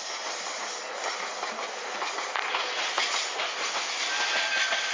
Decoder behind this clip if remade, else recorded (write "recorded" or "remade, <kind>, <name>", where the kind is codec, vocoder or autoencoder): recorded